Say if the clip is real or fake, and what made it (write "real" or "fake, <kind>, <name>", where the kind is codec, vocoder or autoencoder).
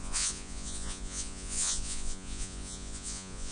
fake, vocoder, Vocos